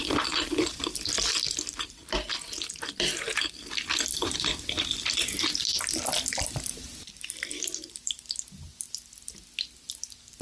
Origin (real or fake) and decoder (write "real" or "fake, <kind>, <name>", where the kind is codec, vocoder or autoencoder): real